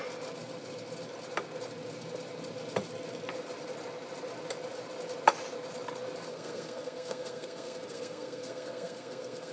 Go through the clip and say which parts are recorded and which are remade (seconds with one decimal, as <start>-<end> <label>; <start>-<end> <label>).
0.0-6.3 recorded; 6.3-9.5 remade